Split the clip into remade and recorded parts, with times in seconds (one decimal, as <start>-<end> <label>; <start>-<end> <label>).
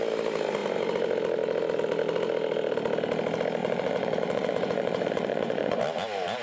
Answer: 0.0-3.6 recorded; 3.6-5.8 remade; 5.8-6.4 recorded